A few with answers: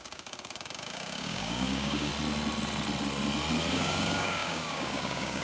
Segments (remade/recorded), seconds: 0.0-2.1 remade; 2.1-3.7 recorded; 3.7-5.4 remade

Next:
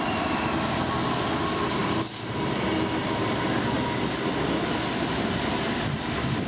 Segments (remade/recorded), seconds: 0.0-6.5 recorded

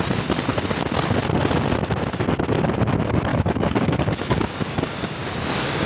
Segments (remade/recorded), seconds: 0.0-3.3 recorded; 3.3-5.9 remade